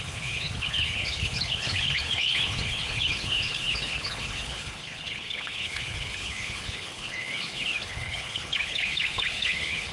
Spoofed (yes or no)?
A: yes